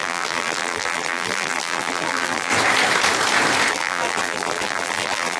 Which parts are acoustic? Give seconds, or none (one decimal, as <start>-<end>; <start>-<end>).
2.5-3.7